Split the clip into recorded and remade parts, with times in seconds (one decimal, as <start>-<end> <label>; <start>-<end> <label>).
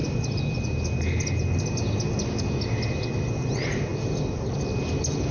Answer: 0.0-5.3 recorded